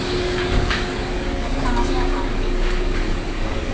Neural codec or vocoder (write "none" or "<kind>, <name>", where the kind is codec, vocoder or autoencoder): codec, DAC